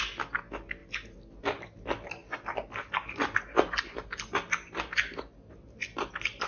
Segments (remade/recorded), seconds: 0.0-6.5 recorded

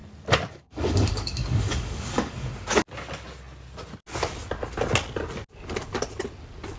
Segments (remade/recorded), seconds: 0.0-0.5 recorded; 0.5-2.5 remade; 2.5-6.8 recorded

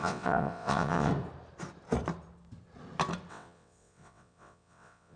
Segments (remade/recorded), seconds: 0.0-1.1 remade; 1.1-3.3 recorded; 3.3-5.2 remade

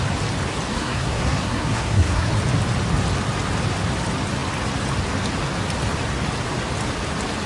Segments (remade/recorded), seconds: 0.0-0.7 recorded; 0.7-2.3 remade; 2.3-7.5 recorded

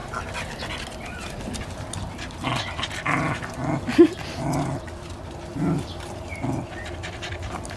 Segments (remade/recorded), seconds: 0.0-7.8 recorded

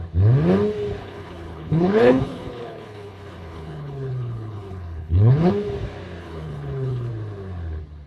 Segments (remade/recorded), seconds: 0.0-1.0 recorded; 1.0-5.5 remade; 5.5-6.2 recorded; 6.2-7.1 remade; 7.1-8.1 recorded